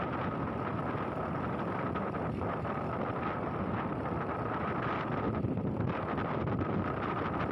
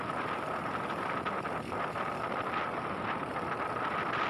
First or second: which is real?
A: second